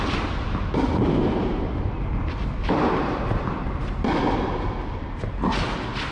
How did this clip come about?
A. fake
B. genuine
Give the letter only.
B